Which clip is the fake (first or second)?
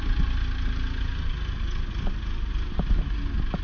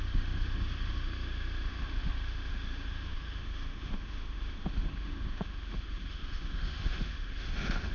second